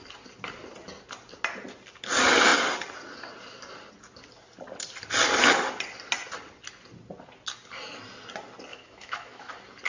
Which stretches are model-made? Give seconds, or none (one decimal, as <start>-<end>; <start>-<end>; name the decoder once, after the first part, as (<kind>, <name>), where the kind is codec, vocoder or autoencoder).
8.7-9.5 (autoencoder, DAC-VAE)